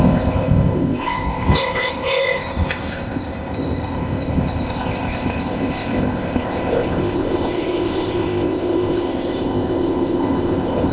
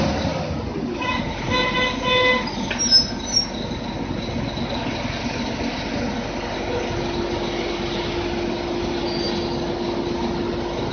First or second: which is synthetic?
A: first